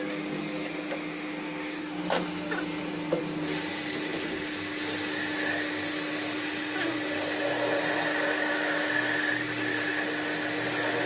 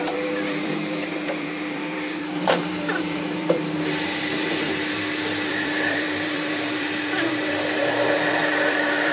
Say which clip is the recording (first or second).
first